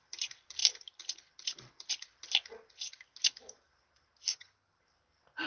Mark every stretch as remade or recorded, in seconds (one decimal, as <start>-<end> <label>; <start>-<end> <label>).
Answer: 0.0-4.3 recorded; 4.3-4.8 remade; 4.8-5.5 recorded